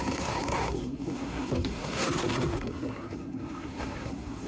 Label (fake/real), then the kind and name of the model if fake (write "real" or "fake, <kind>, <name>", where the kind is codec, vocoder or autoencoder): fake, codec, SNAC